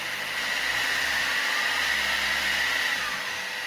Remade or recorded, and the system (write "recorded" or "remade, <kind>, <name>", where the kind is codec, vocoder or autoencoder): recorded